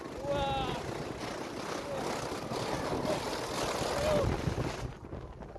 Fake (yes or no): no